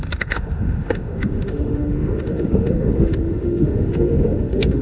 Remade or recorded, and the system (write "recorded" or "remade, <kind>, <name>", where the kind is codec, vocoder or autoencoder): remade, autoencoder, DAC-VAE